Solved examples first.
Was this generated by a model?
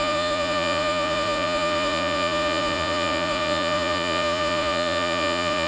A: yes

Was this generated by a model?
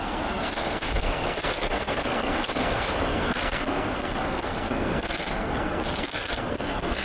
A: yes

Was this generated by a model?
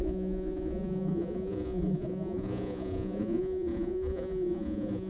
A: yes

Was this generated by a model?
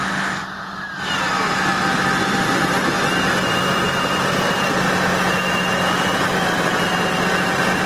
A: no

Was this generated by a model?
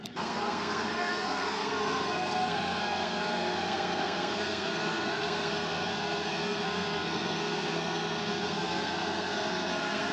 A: yes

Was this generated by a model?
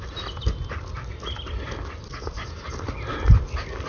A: no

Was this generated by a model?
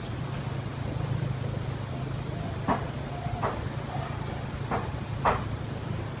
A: no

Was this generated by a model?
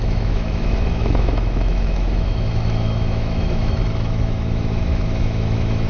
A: yes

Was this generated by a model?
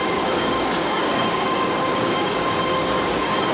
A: yes